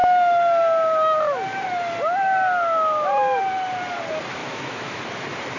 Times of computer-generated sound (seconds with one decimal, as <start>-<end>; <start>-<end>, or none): 4.4-5.0